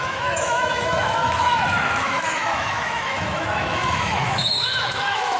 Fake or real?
fake